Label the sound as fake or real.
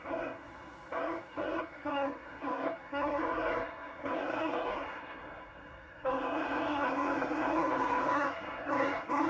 fake